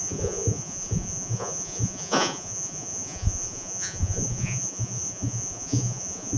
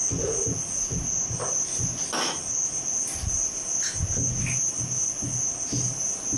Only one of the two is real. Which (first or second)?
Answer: second